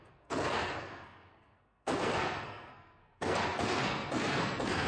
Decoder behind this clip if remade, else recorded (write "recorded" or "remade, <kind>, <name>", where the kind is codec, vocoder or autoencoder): remade, codec, SNAC